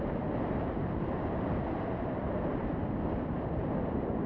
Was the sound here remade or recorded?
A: recorded